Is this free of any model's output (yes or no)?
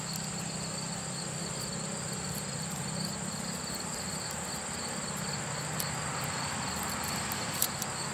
yes